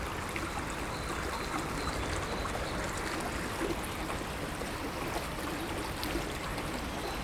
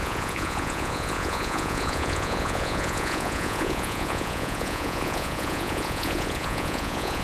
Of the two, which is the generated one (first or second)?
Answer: second